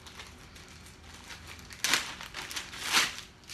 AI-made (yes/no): no